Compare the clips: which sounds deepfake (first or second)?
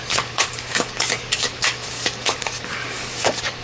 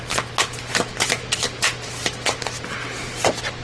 first